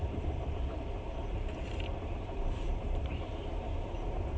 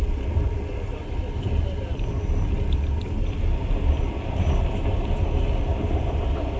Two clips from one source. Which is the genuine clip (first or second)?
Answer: second